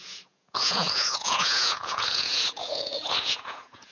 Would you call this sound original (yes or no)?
no